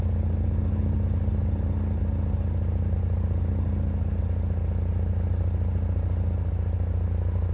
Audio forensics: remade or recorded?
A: recorded